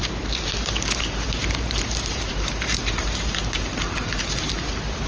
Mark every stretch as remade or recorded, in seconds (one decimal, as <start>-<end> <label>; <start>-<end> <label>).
0.0-1.4 recorded; 1.4-4.5 remade; 4.5-5.1 recorded